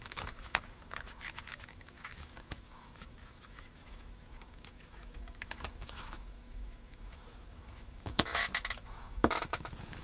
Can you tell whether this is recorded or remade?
remade